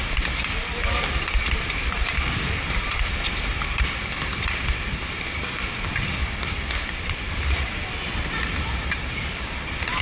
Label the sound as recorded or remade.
remade